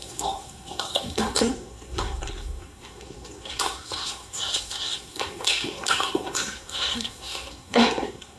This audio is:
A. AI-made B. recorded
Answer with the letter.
A